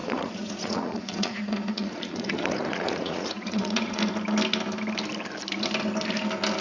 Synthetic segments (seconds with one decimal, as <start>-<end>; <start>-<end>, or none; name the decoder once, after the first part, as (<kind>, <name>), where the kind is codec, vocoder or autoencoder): 0.0-4.0 (vocoder, Vocos)